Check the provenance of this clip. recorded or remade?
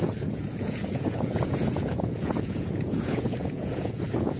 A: remade